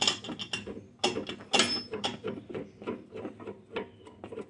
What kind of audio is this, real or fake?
real